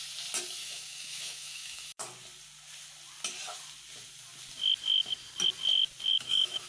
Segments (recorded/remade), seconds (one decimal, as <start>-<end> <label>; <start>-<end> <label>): 0.0-0.6 recorded; 0.6-2.0 remade; 2.0-6.1 recorded; 6.1-6.7 remade